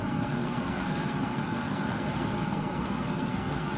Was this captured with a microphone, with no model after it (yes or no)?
no